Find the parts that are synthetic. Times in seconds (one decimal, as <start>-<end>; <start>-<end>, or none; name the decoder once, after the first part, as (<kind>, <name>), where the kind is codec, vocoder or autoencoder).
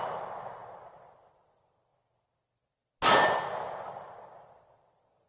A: none